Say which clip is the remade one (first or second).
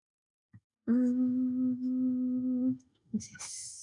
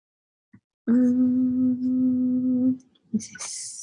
first